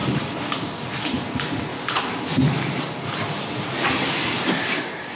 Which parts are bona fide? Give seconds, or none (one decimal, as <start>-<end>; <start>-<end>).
1.7-4.8